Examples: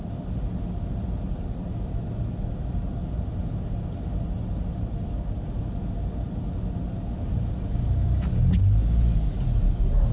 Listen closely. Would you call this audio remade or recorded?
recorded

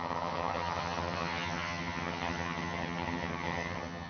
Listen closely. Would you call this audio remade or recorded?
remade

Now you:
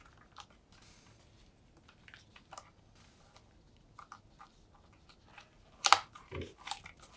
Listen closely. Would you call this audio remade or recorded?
recorded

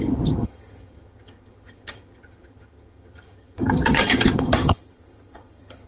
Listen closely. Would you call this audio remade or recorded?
remade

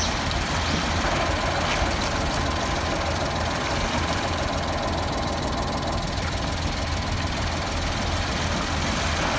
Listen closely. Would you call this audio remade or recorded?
recorded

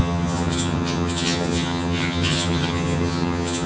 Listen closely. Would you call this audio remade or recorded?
remade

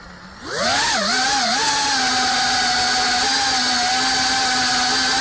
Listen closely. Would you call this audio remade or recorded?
recorded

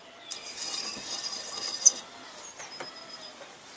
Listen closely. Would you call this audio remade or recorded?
recorded